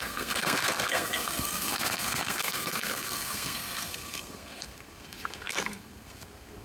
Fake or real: fake